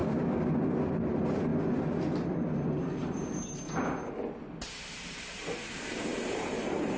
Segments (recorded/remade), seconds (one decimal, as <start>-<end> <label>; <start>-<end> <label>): 0.0-1.1 recorded; 1.1-1.5 remade; 1.5-5.7 recorded; 5.7-7.0 remade